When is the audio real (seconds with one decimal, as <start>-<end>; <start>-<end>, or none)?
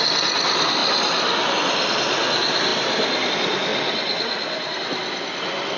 0.0-5.8